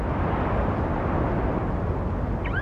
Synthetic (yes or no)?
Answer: no